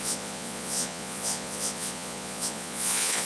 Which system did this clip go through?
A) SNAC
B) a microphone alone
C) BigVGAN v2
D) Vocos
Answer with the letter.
D